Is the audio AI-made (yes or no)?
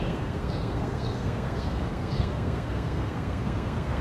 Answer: yes